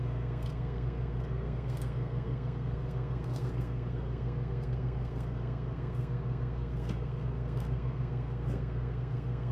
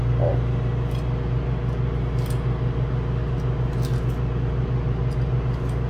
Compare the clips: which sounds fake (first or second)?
first